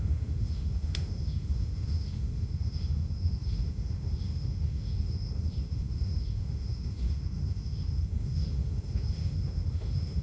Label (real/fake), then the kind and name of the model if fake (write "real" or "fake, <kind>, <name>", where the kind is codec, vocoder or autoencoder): fake, autoencoder, DAC-VAE